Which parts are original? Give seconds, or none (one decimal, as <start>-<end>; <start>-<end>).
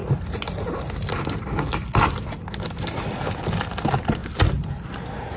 0.0-4.2